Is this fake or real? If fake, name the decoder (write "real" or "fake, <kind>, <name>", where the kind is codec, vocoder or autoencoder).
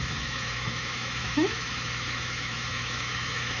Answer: fake, autoencoder, DAC-VAE